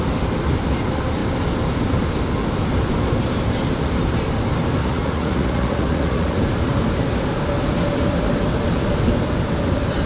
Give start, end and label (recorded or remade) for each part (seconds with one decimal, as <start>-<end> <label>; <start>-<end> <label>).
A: 0.0-4.8 recorded; 4.8-6.4 remade; 6.4-10.1 recorded